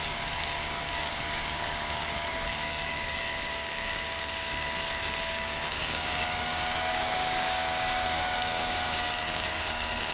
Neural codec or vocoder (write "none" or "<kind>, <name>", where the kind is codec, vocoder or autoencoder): codec, DAC